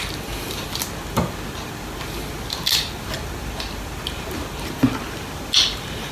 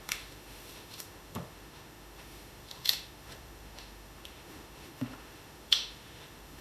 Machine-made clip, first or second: second